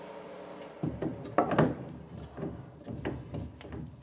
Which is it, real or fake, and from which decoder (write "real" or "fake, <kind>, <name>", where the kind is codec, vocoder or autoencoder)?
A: real